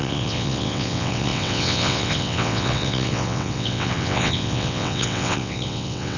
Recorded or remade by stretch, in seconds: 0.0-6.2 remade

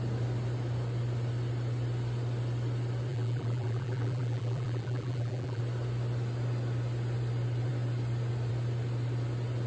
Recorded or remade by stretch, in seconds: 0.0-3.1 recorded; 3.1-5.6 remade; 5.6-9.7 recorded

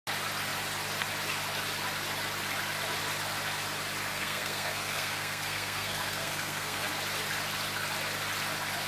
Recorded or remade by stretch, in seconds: 0.0-4.1 recorded; 4.1-6.9 remade; 6.9-8.9 recorded

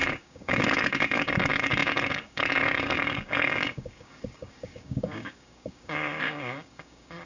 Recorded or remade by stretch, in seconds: 0.0-7.3 remade

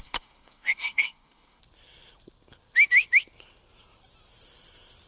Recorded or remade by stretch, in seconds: 0.0-1.6 remade; 1.6-5.1 recorded

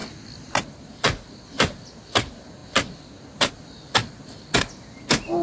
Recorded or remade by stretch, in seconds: 0.0-5.4 recorded